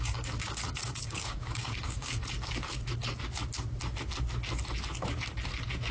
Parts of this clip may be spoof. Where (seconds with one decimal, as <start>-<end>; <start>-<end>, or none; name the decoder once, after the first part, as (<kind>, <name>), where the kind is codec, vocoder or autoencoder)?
0.0-2.2 (codec, DAC)